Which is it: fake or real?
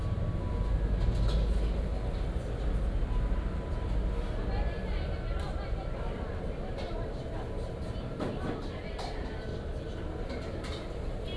real